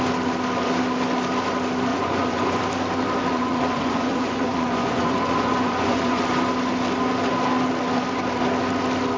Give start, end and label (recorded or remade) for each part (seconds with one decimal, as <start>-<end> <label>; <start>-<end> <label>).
0.0-1.9 recorded; 1.9-2.6 remade; 2.6-3.3 recorded; 3.3-6.2 remade; 6.2-9.2 recorded